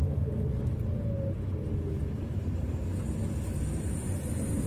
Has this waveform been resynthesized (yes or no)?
no